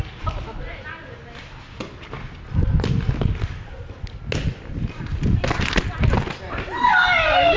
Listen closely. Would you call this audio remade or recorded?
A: recorded